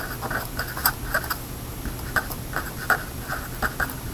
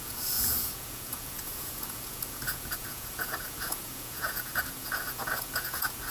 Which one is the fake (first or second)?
second